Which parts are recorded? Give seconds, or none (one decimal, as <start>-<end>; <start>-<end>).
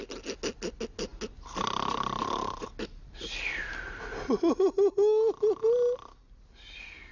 0.0-7.1